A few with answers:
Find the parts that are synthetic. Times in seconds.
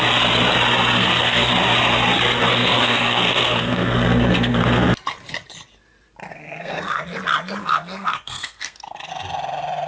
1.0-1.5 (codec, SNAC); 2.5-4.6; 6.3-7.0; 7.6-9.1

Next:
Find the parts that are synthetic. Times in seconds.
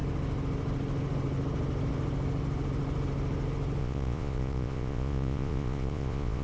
3.8-6.4 (vocoder, Vocos)